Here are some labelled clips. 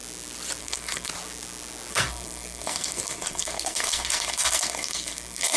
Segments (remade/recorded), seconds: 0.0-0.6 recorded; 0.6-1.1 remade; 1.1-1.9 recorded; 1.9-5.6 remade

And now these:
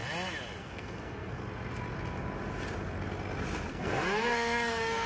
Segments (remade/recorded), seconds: 0.0-0.6 recorded; 0.6-1.4 remade; 1.4-3.7 recorded; 3.7-5.1 remade